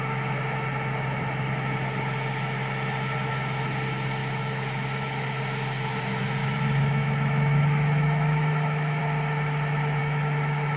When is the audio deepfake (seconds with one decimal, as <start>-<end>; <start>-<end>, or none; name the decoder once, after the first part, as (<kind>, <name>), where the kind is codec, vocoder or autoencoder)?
4.2-5.4 (autoencoder, DAC-VAE); 6.4-9.0; 10.0-10.8